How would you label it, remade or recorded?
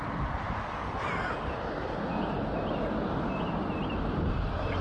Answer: recorded